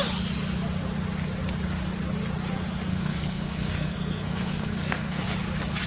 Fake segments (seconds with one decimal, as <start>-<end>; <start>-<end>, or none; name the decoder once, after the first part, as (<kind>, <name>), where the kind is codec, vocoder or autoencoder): 2.9-5.2 (codec, SNAC)